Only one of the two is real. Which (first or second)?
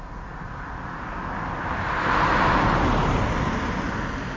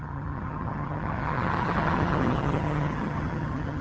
first